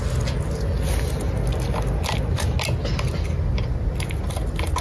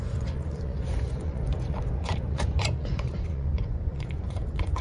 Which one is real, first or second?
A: first